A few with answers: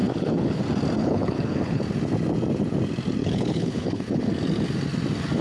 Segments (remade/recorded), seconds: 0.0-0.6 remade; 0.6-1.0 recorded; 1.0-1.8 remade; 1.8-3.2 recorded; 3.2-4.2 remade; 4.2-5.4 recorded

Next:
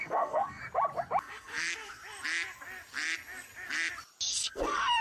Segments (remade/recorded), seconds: 0.0-0.6 remade; 0.6-1.2 recorded; 1.2-2.0 remade; 2.0-4.3 recorded; 4.3-5.0 remade